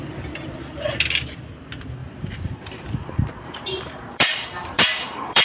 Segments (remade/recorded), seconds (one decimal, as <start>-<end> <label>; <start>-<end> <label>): 0.0-2.0 recorded; 2.0-5.4 remade